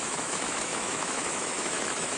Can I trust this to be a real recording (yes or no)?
no